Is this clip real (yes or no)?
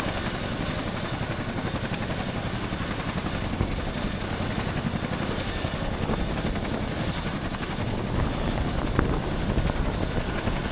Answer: yes